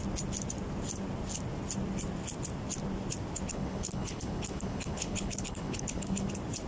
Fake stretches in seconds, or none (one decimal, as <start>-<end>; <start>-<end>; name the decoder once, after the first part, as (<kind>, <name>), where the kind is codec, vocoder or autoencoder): 3.5-6.3 (codec, HILCodec)